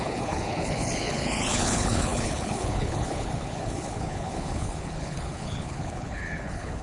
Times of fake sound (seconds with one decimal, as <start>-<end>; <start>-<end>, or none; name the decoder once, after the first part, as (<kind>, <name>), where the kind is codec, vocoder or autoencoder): 0.0-6.8 (codec, HILCodec)